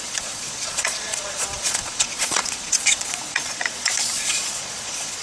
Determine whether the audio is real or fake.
fake